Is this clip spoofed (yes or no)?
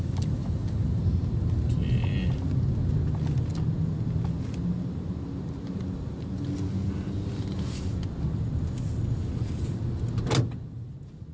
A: no